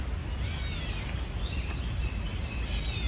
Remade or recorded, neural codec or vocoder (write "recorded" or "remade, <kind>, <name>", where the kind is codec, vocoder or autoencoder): recorded